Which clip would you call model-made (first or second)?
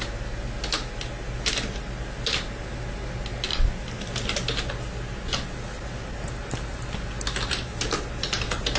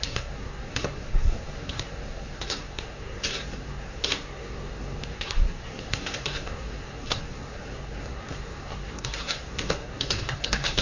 second